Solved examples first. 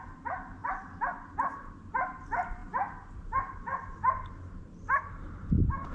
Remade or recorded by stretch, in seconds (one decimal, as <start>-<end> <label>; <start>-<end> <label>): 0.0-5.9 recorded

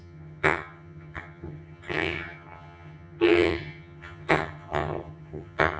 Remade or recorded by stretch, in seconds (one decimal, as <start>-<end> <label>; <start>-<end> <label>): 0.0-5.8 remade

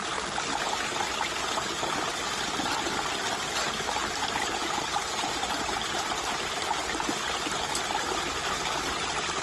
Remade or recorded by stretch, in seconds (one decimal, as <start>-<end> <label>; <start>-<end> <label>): 0.0-4.6 recorded; 4.6-6.2 remade; 6.2-9.4 recorded